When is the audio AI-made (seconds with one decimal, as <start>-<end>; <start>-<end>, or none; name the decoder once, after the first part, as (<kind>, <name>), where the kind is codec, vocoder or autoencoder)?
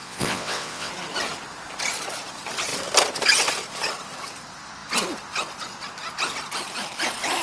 0.0-0.9 (vocoder, WaveNeXt)